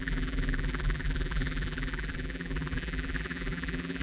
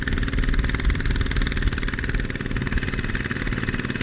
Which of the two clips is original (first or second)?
second